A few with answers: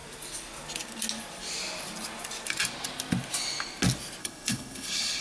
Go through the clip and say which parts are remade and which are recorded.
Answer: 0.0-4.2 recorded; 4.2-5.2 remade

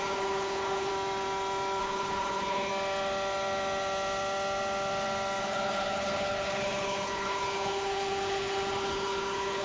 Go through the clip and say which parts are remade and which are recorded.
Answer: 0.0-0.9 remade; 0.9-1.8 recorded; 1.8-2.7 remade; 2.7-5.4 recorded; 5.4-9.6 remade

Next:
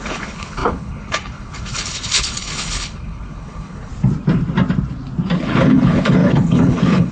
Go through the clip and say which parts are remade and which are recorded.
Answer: 0.0-3.9 remade; 3.9-5.4 recorded; 5.4-7.1 remade

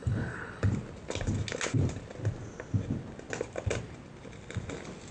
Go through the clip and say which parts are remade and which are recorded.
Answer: 0.0-0.7 remade; 0.7-5.1 recorded

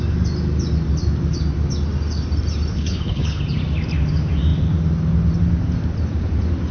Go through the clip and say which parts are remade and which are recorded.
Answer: 0.0-2.7 recorded; 2.7-3.4 remade; 3.4-6.7 recorded

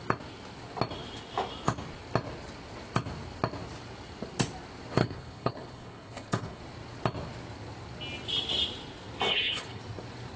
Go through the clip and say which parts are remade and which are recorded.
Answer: 0.0-5.0 recorded; 5.0-6.6 remade; 6.6-9.3 recorded; 9.3-9.8 remade; 9.8-10.4 recorded